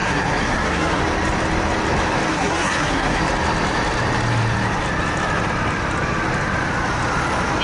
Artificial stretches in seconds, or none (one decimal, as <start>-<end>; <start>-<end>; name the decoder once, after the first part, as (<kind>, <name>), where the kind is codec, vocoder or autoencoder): 0.0-1.0 (codec, SNAC); 2.3-3.2